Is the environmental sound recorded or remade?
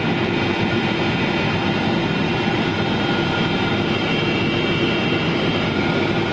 recorded